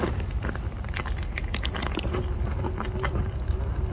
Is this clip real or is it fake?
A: real